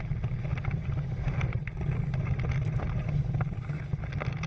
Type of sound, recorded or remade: recorded